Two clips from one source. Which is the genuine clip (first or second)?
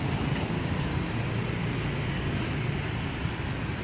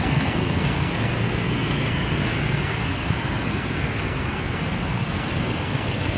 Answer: first